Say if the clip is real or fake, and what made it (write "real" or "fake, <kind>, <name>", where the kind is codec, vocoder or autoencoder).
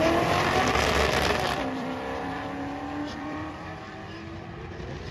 fake, vocoder, BigVGAN v2